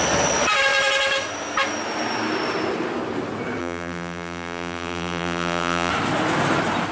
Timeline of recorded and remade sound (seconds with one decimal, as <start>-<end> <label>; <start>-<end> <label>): 0.0-3.6 recorded; 3.6-5.9 remade; 5.9-6.9 recorded